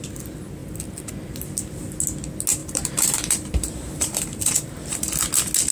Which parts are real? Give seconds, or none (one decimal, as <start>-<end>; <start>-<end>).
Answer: 0.0-2.6; 5.2-5.7

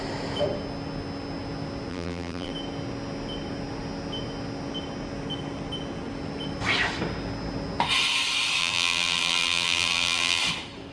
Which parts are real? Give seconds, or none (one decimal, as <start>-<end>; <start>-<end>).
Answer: 0.0-1.9; 2.5-8.6; 10.4-10.9

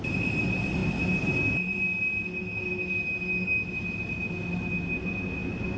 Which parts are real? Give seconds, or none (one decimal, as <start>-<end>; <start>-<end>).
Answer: 0.0-5.8

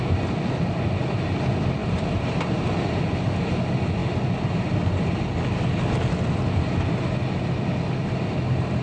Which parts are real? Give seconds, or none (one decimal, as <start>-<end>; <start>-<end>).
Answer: 0.0-1.8; 3.0-8.8